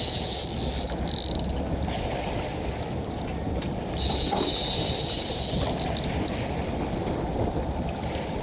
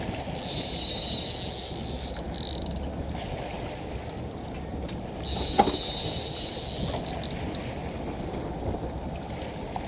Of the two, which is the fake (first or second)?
first